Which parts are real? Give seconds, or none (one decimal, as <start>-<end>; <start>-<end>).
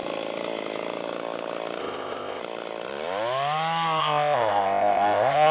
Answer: 0.0-1.8; 2.4-4.0